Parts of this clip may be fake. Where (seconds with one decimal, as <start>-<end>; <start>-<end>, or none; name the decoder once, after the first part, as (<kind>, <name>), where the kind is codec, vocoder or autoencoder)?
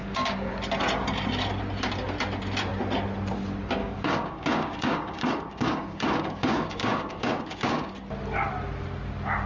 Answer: 0.0-0.5 (codec, DAC); 3.8-7.9